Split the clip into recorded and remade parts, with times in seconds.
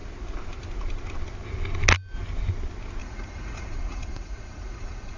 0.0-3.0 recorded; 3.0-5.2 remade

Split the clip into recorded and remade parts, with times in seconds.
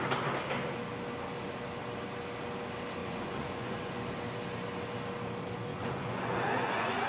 0.0-3.0 recorded; 3.0-3.9 remade; 3.9-5.7 recorded; 5.7-7.1 remade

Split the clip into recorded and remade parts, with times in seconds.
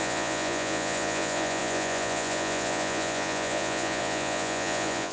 0.0-5.1 remade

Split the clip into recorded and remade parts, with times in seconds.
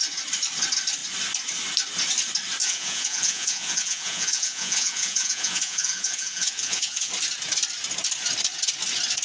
0.0-2.6 recorded; 2.6-7.1 remade; 7.1-9.2 recorded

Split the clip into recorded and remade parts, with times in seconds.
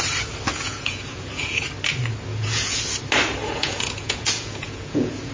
0.0-0.5 recorded; 0.5-1.7 remade; 1.7-2.3 recorded; 2.3-2.8 remade; 2.8-3.4 recorded; 3.4-5.3 remade